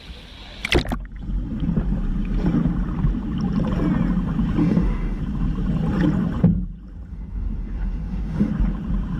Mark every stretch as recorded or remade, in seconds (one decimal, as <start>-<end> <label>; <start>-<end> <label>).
0.0-4.6 recorded; 4.6-5.2 remade; 5.2-7.1 recorded; 7.1-8.5 remade; 8.5-9.2 recorded